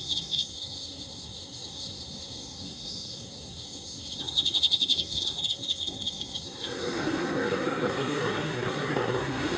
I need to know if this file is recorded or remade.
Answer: remade